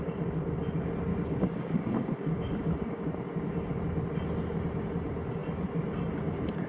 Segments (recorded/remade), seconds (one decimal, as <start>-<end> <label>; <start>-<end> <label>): 0.0-1.1 recorded; 1.1-3.1 remade; 3.1-6.7 recorded